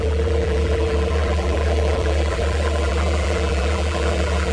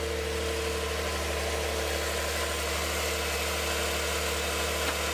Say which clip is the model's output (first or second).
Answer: first